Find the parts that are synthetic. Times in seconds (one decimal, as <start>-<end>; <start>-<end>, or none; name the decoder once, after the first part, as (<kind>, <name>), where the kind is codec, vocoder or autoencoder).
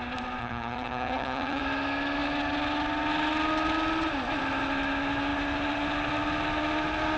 0.4-1.6 (vocoder, HiFi-GAN)